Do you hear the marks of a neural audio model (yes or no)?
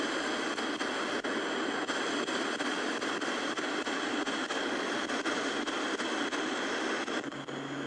no